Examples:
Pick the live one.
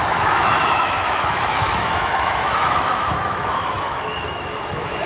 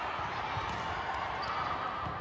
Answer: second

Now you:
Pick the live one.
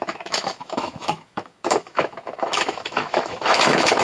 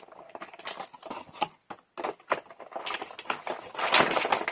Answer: second